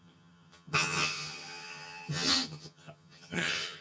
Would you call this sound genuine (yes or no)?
no